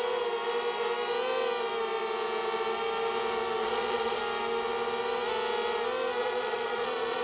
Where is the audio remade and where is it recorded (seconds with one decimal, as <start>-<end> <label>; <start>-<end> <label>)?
0.0-3.6 recorded; 3.6-4.2 remade; 4.2-6.2 recorded; 6.2-7.2 remade